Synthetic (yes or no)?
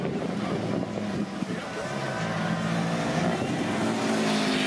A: no